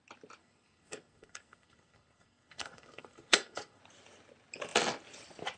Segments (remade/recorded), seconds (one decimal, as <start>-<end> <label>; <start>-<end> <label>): 0.0-0.4 recorded; 0.4-3.8 remade; 3.8-5.6 recorded